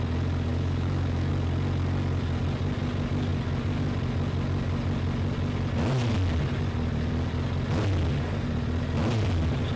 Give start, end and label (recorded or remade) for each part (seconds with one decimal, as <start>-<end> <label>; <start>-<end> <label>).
0.0-0.5 recorded; 0.5-1.3 remade; 1.3-9.8 recorded